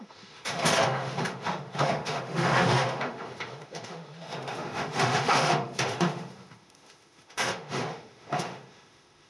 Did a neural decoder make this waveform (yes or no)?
yes